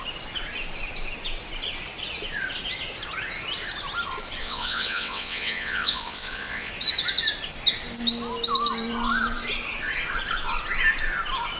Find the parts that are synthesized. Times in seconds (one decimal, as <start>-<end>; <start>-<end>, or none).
4.4-6.7